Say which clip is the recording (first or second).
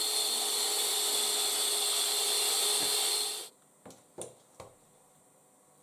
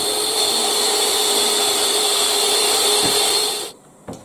first